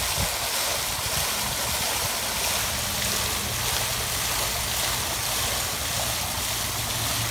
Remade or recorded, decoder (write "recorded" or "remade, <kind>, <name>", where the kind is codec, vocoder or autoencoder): recorded